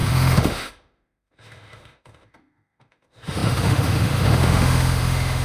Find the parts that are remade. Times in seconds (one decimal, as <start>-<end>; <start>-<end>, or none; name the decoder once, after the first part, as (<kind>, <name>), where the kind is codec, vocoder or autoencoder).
0.0-5.4 (autoencoder, DAC-VAE)

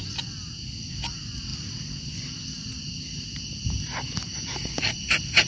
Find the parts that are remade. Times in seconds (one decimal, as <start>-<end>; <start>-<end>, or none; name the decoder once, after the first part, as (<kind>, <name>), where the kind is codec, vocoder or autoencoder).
none